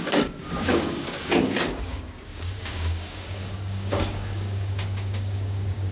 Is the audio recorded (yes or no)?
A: no